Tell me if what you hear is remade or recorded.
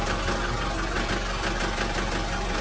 recorded